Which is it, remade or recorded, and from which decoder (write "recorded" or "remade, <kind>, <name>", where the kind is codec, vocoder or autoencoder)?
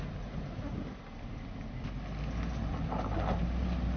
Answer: recorded